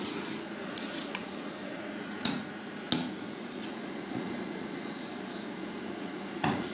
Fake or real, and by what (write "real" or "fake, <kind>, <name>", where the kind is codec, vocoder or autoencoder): fake, vocoder, Vocos